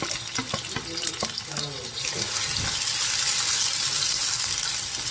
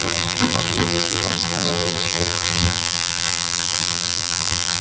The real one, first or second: first